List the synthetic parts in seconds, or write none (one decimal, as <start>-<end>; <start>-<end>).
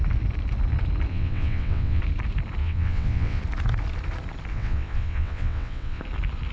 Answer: 1.1-2.0; 2.6-3.4; 4.5-6.0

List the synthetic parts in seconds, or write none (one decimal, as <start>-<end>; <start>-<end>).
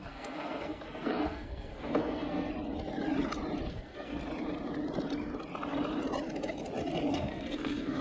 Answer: 0.0-2.5; 3.7-4.2; 7.1-8.0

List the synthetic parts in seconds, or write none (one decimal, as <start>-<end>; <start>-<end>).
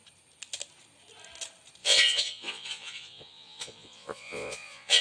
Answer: 1.8-5.0